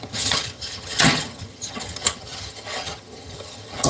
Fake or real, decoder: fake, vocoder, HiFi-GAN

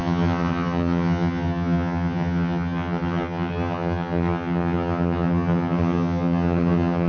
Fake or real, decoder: fake, vocoder, HiFi-GAN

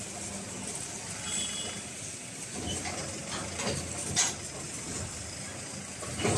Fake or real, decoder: real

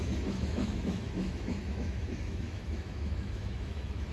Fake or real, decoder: fake, autoencoder, DAC-VAE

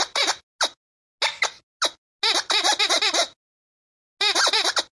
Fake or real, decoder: real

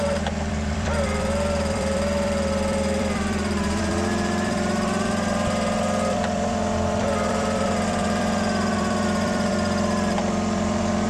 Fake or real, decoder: fake, vocoder, BigVGAN v2